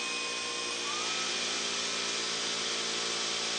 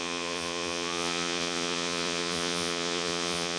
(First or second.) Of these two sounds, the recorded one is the first